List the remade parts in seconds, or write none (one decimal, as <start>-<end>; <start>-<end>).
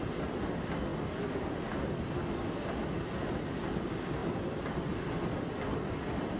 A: 4.2-4.9